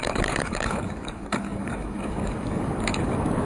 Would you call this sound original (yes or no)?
no